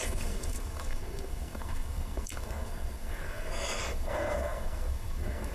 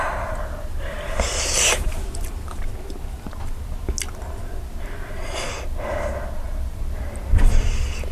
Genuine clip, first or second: second